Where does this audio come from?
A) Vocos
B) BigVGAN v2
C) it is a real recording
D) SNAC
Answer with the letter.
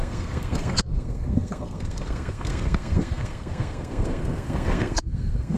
D